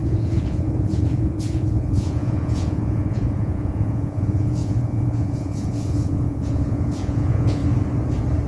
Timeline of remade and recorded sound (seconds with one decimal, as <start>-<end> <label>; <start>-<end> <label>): 0.0-7.6 remade; 7.6-8.5 recorded